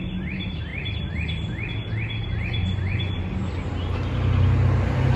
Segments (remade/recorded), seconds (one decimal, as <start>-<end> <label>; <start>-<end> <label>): 0.0-2.6 recorded; 2.6-3.3 remade; 3.3-5.2 recorded